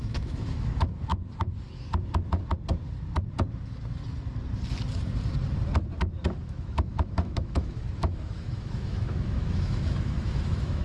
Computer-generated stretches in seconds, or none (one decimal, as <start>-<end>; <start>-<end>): 0.0-1.1; 6.4-10.8